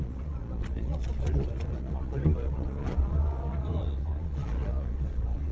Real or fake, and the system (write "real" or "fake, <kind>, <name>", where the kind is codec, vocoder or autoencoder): fake, vocoder, Vocos